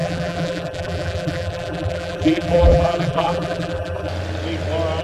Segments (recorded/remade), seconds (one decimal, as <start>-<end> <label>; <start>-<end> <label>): 0.0-4.1 remade; 4.1-5.0 recorded